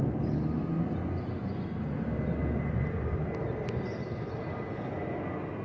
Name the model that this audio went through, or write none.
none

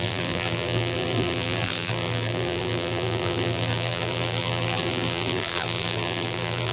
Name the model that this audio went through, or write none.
vocoder, BigVGAN v2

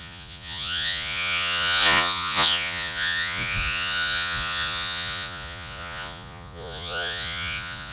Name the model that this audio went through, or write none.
vocoder, Vocos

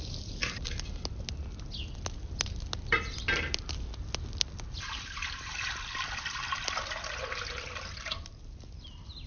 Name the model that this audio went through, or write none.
none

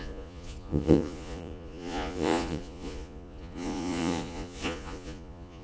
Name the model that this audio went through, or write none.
vocoder, Vocos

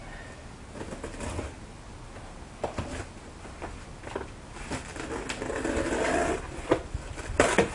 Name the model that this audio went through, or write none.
none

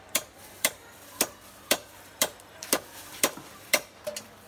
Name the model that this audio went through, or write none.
vocoder, BigVGAN v2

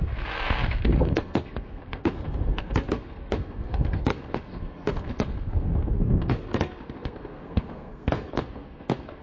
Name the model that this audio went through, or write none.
codec, SNAC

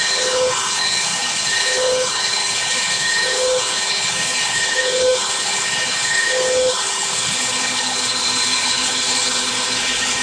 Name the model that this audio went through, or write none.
codec, HILCodec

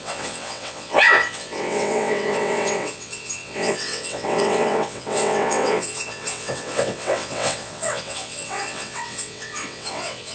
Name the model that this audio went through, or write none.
vocoder, WaveNeXt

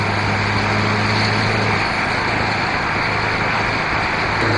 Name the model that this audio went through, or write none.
none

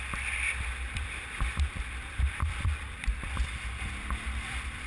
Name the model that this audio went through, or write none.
vocoder, BigVGAN v2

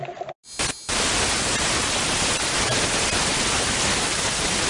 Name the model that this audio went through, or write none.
none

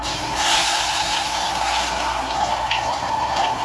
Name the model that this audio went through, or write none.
codec, SNAC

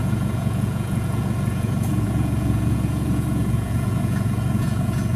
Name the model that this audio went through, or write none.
vocoder, Vocos